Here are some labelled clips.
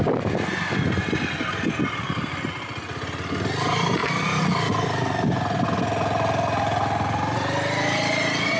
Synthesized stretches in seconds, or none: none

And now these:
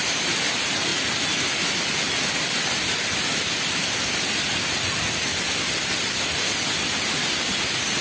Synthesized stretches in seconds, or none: none

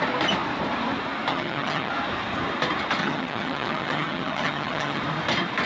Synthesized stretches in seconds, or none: 1.3-1.9 (vocoder, HiFi-GAN); 3.0-5.0

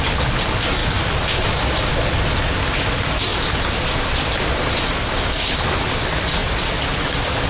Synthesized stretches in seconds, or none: none

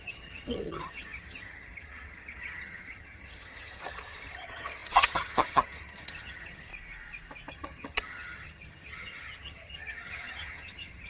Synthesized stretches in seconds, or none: 0.0-6.7 (vocoder, HiFi-GAN); 7.5-11.1

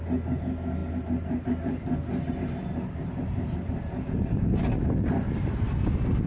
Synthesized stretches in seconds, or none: none

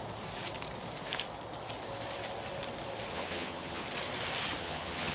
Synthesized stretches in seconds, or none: 3.1-3.8 (vocoder, HiFi-GAN); 4.6-5.1